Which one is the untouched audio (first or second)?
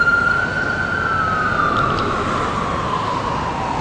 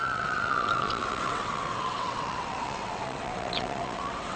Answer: first